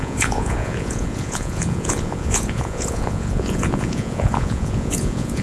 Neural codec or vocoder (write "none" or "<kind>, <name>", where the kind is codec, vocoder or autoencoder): vocoder, Vocos